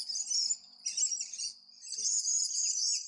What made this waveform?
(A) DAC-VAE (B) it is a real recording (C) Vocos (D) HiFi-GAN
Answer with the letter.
B